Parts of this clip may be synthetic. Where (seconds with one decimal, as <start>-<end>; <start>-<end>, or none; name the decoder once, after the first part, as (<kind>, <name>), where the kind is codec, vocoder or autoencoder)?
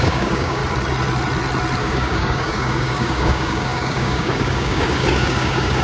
0.0-0.6 (codec, DAC); 1.8-5.8